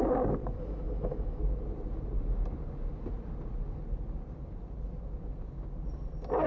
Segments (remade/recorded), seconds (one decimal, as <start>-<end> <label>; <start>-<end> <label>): 0.0-0.4 recorded; 0.4-1.4 remade; 1.4-6.5 recorded